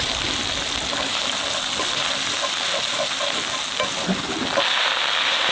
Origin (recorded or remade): recorded